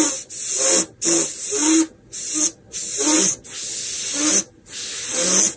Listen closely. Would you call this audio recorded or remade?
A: recorded